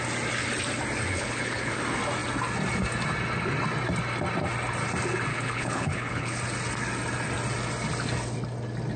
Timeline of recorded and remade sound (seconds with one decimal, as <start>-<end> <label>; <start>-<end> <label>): 0.0-1.1 recorded; 1.1-1.8 remade; 1.8-5.3 recorded; 5.3-6.4 remade; 6.4-9.0 recorded